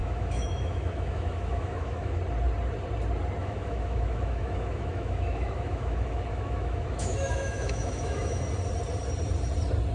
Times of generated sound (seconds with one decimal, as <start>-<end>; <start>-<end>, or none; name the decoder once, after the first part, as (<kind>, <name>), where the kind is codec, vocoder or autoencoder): 0.0-2.2 (autoencoder, DAC-VAE); 3.4-8.4